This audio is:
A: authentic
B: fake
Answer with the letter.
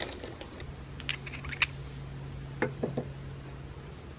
A